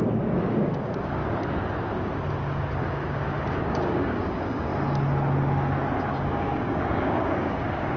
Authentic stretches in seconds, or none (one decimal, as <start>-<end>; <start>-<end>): 1.2-2.8; 4.7-6.0